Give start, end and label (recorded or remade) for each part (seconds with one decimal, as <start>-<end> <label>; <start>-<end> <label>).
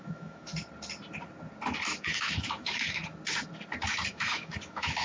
0.0-0.5 remade; 0.5-2.0 recorded; 2.0-3.0 remade; 3.0-4.1 recorded; 4.1-5.0 remade